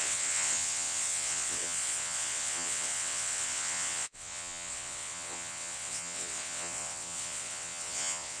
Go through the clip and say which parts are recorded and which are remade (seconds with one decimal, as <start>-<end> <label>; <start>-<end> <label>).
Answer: 0.0-8.4 remade